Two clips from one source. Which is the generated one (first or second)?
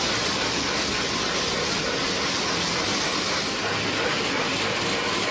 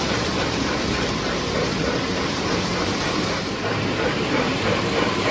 second